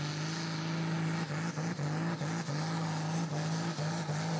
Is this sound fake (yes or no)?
no